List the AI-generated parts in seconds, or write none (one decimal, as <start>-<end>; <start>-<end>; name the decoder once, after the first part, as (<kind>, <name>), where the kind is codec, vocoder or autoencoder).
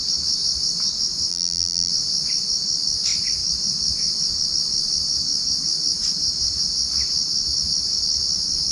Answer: 1.3-1.9 (vocoder, BigVGAN v2)